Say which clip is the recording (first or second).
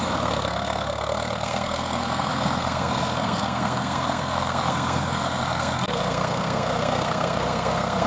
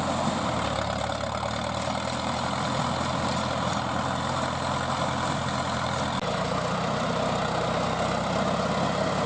second